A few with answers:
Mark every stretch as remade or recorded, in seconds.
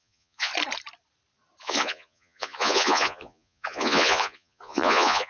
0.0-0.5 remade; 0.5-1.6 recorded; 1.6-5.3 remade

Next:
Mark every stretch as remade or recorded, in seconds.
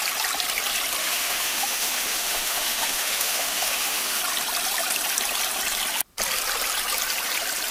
0.0-1.0 recorded; 1.0-4.2 remade; 4.2-7.7 recorded